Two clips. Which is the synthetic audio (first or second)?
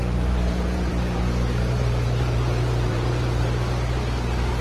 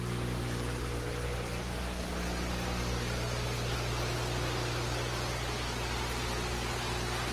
first